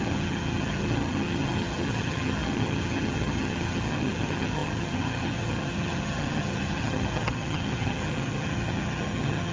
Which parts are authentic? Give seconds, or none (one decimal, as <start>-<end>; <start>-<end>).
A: none